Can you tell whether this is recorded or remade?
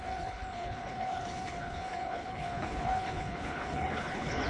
remade